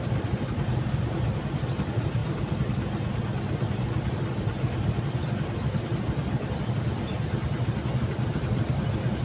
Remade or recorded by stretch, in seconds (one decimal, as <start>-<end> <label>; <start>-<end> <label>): 0.0-9.2 recorded